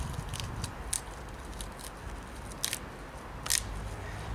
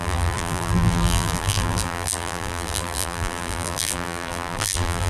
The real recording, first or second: first